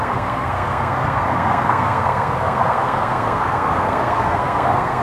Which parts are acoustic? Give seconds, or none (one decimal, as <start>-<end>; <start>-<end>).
none